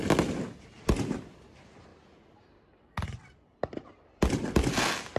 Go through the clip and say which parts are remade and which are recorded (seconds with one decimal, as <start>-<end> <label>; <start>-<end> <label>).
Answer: 0.0-5.2 recorded